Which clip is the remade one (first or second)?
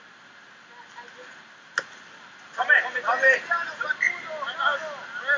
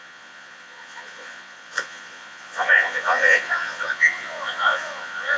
second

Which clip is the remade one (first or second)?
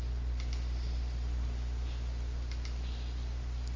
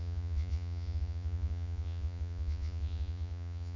second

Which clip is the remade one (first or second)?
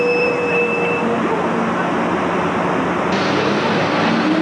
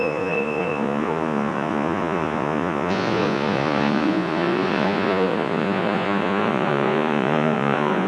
second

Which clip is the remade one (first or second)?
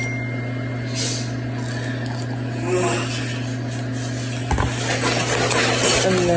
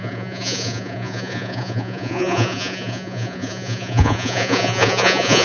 second